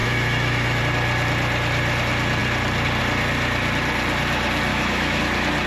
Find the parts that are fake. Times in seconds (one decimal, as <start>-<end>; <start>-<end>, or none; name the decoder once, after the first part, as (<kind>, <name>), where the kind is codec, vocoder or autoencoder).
0.0-0.8 (autoencoder, DAC-VAE); 4.7-5.2